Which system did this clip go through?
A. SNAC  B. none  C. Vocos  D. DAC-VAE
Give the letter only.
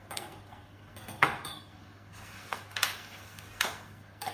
A